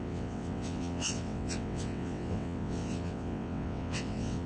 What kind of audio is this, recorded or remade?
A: remade